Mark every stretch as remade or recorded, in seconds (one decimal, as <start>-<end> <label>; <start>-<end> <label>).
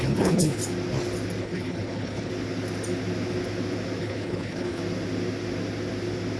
0.0-0.6 remade; 0.6-1.4 recorded; 1.4-2.3 remade; 2.3-4.0 recorded; 4.0-4.8 remade; 4.8-6.4 recorded